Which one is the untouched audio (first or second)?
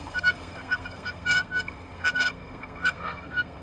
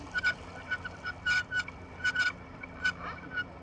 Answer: second